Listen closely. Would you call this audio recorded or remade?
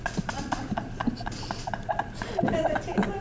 recorded